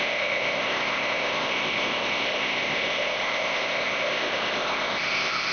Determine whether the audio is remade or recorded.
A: remade